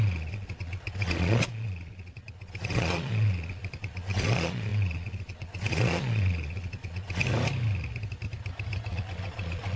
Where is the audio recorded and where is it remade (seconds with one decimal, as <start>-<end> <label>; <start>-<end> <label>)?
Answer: 0.0-7.2 remade; 7.2-8.9 recorded; 8.9-9.8 remade